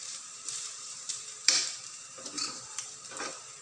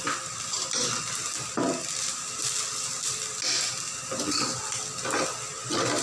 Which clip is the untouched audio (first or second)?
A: second